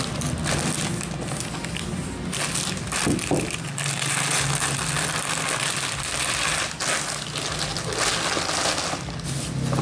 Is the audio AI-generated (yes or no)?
no